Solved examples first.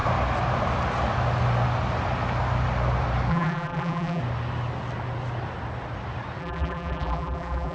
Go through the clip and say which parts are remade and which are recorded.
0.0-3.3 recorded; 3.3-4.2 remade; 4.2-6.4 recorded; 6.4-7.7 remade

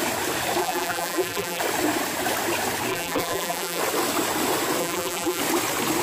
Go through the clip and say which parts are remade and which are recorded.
0.0-0.6 recorded; 0.6-1.6 remade; 1.6-2.9 recorded; 2.9-3.8 remade; 3.8-4.8 recorded; 4.8-5.4 remade; 5.4-6.0 recorded

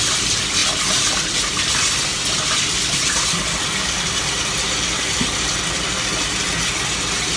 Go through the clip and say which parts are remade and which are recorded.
0.0-7.4 recorded

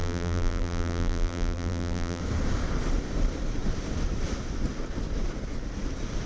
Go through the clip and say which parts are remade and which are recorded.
0.0-2.2 remade; 2.2-6.3 recorded

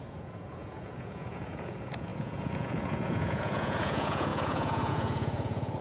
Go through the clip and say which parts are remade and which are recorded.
0.0-5.8 remade

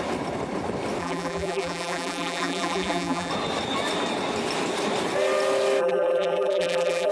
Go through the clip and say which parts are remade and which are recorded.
0.0-1.0 recorded; 1.0-3.3 remade; 3.3-5.8 recorded; 5.8-7.1 remade

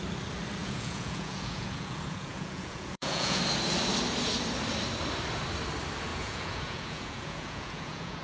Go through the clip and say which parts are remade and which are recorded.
0.0-0.6 recorded; 0.6-3.4 remade; 3.4-6.1 recorded; 6.1-8.2 remade